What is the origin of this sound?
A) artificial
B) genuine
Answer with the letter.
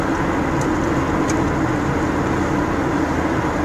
B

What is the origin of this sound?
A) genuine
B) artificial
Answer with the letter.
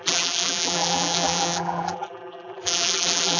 B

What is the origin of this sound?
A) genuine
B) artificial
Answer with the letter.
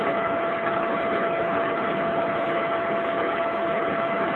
B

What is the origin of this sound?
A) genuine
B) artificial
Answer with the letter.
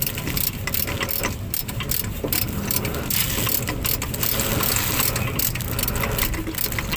A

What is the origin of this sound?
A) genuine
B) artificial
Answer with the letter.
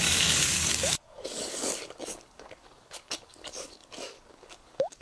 B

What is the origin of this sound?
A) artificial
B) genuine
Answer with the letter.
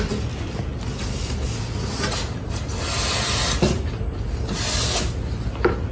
B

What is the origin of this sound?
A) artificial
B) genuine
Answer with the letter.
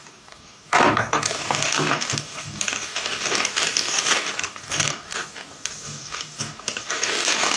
A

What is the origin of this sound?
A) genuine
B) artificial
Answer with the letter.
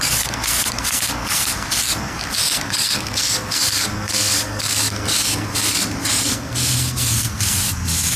B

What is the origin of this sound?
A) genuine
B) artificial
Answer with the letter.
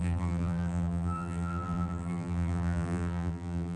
B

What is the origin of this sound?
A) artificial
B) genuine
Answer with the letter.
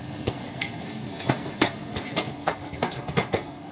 A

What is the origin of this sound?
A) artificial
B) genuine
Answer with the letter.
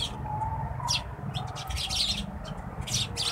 B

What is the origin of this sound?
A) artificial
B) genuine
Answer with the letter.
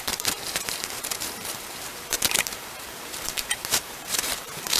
A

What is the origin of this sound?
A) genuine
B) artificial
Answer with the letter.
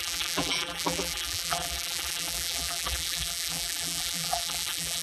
B